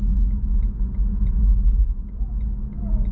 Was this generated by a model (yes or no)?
no